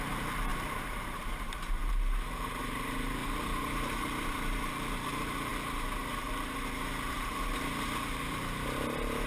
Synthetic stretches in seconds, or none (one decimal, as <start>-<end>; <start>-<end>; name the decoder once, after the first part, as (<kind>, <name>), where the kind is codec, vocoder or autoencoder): 0.5-1.8 (vocoder, BigVGAN v2); 3.2-4.7